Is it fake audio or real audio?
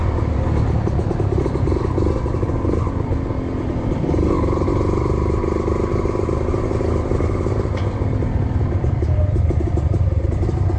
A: real